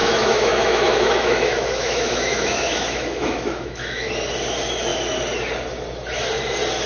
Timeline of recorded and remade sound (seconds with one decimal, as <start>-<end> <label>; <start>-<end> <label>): 0.0-4.1 remade; 4.1-6.9 recorded